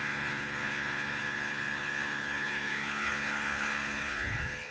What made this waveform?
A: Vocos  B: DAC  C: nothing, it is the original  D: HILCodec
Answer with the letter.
D